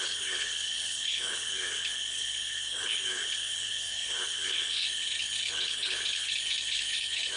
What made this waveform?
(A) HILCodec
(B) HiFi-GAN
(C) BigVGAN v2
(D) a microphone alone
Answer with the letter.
A